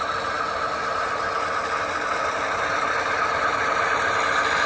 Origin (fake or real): real